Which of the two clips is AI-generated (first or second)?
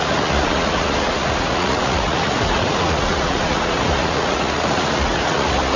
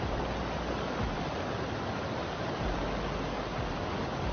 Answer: first